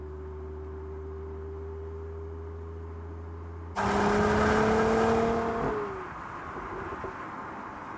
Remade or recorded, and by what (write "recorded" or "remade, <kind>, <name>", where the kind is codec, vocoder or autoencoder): recorded